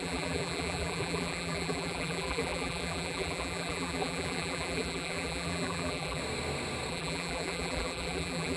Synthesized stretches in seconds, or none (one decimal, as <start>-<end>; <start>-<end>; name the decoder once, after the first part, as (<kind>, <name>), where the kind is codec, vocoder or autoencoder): 0.0-6.2 (vocoder, BigVGAN v2); 6.9-8.6